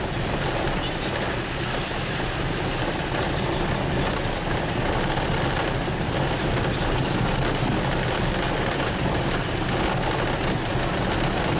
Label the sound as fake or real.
real